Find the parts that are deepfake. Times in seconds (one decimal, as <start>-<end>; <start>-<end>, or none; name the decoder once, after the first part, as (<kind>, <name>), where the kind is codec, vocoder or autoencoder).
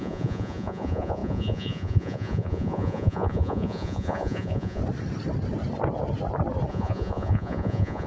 0.0-4.8 (vocoder, Vocos); 6.7-8.1